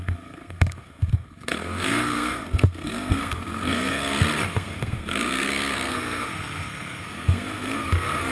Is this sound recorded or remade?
remade